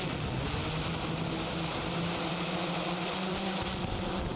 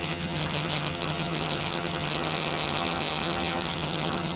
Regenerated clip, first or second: second